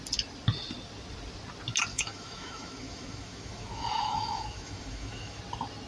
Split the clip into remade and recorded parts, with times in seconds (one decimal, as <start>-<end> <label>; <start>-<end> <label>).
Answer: 0.0-1.9 recorded; 1.9-5.4 remade; 5.4-5.9 recorded